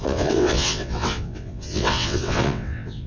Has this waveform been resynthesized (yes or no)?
yes